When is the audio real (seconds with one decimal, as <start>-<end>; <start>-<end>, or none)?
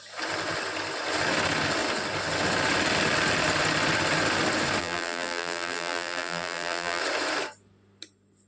0.0-4.8; 7.0-8.5